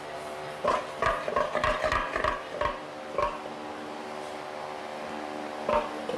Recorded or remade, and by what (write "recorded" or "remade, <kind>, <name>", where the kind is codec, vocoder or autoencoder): recorded